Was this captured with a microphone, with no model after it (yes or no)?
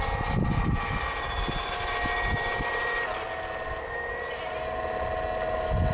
yes